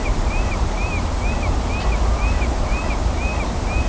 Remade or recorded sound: recorded